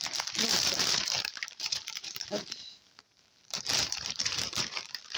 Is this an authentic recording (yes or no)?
no